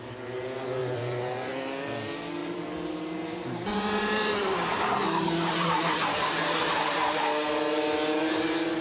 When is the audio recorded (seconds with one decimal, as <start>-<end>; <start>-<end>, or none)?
0.0-0.8; 1.5-2.4; 7.2-8.8